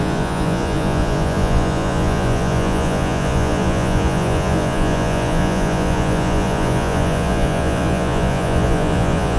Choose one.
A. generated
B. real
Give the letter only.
A